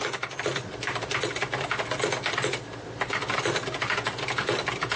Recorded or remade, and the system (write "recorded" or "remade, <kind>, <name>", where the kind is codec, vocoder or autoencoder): recorded